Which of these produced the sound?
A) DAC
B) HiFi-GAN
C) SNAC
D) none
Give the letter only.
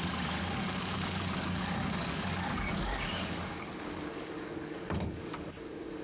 A